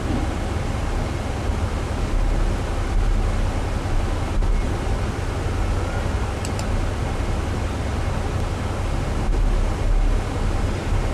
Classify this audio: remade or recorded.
recorded